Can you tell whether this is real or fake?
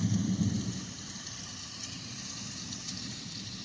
fake